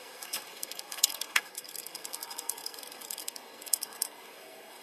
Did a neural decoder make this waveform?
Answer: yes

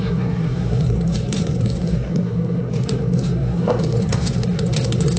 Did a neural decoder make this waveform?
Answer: yes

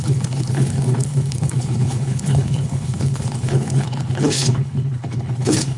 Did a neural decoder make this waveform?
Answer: yes